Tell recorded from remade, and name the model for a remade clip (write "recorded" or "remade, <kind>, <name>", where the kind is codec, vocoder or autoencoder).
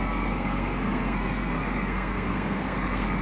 remade, codec, SNAC